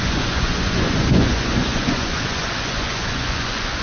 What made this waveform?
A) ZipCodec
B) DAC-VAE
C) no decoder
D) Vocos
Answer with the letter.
D